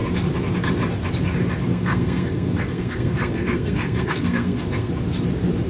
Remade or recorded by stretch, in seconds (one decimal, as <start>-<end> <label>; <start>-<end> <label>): 0.0-1.7 recorded; 1.7-4.9 remade; 4.9-5.7 recorded